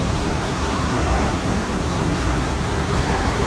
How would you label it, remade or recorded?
remade